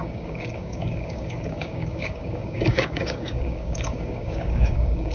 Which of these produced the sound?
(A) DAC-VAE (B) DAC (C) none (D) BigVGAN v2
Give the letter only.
B